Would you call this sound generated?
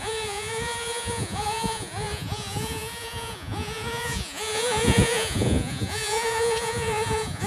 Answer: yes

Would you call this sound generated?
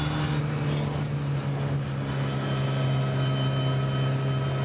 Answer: no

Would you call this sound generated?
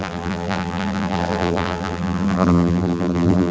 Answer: yes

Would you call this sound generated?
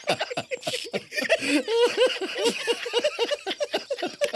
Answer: no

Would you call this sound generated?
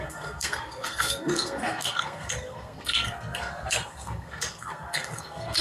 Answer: yes